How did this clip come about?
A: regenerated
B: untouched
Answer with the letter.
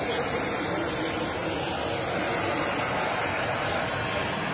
B